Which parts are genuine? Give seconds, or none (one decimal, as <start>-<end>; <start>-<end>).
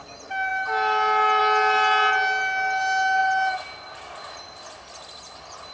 0.0-5.7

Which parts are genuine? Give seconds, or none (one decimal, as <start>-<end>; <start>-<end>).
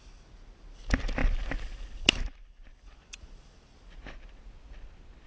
0.0-5.3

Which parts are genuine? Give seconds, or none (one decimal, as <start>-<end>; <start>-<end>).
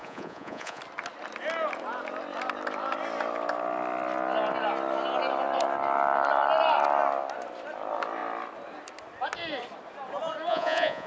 0.8-10.5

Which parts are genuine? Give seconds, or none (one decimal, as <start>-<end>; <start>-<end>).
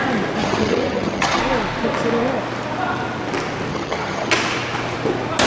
0.0-0.4; 1.4-3.7; 4.3-5.5